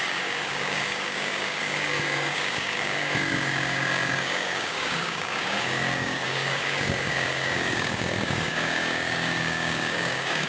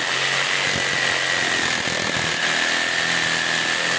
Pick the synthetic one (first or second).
first